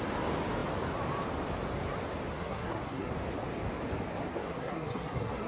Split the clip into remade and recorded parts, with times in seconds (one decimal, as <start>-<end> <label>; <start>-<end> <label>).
0.0-2.3 recorded; 2.3-3.1 remade; 3.1-4.3 recorded; 4.3-5.5 remade